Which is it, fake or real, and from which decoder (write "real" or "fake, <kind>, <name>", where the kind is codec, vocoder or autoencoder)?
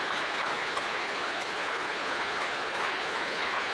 fake, codec, HILCodec